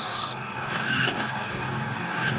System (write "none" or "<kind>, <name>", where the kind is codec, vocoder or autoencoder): codec, DAC